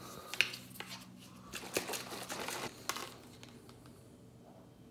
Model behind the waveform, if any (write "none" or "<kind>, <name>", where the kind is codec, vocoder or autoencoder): none